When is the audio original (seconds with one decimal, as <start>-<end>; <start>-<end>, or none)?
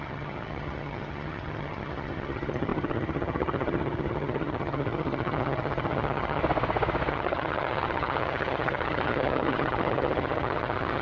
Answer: 6.4-7.1